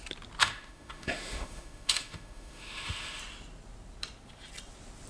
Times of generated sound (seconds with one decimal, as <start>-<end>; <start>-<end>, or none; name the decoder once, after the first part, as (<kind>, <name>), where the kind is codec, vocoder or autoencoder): 0.4-3.2 (autoencoder, DAC-VAE)